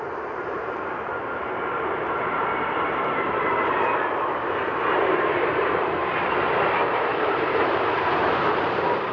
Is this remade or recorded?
remade